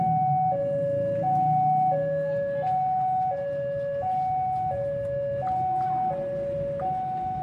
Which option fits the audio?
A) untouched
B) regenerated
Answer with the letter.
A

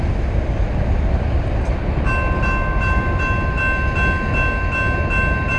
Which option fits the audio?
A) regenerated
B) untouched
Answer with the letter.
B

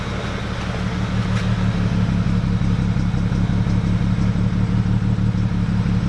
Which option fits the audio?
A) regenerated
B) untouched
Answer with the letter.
B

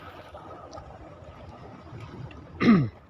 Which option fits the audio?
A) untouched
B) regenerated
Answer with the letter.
A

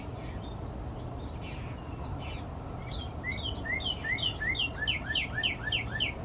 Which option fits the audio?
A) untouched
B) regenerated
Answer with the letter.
A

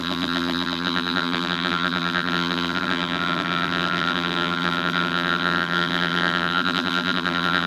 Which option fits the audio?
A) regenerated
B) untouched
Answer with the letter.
A